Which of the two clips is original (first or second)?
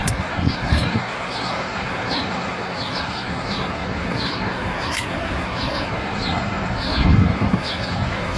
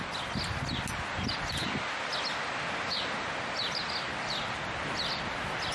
second